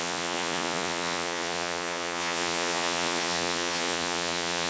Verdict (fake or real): fake